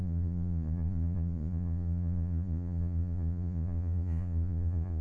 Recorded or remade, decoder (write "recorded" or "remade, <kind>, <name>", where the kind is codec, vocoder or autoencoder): remade, vocoder, Vocos